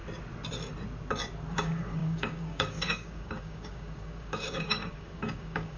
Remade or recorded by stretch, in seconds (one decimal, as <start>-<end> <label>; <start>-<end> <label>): 0.0-1.5 recorded; 1.5-5.8 remade